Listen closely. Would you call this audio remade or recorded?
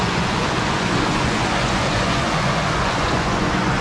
remade